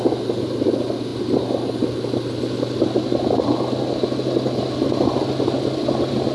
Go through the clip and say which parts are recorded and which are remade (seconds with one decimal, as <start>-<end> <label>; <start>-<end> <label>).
0.0-6.3 recorded